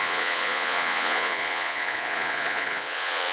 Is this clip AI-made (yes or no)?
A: yes